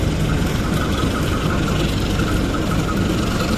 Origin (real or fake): real